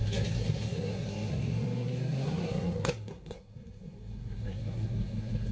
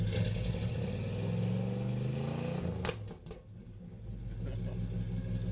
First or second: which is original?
second